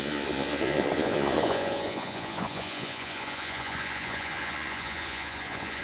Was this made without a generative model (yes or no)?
no